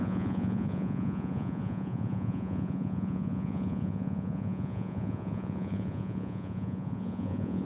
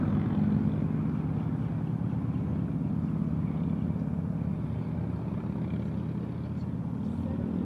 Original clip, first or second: second